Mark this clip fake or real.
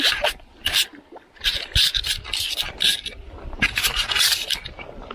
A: real